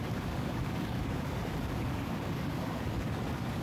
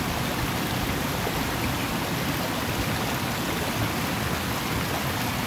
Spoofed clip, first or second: first